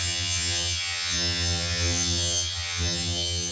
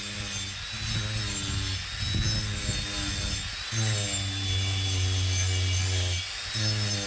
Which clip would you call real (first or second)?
second